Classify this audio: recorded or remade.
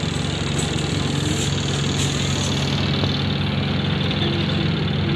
recorded